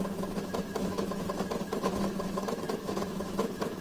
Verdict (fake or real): fake